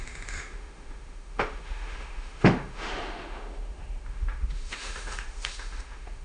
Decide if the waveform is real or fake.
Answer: fake